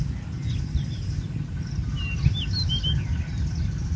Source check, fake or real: real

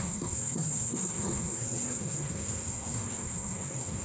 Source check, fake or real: fake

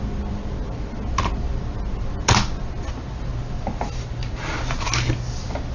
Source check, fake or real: real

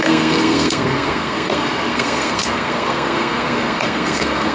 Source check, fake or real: fake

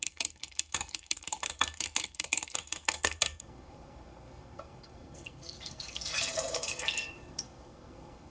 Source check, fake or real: fake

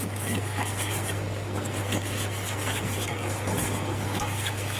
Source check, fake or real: fake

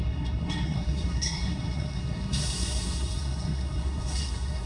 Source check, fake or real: fake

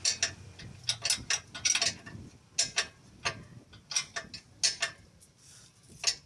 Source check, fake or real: real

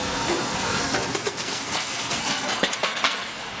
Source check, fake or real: fake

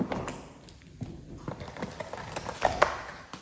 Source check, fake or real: real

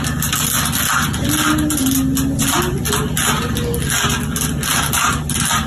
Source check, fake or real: real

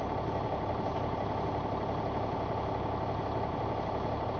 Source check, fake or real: real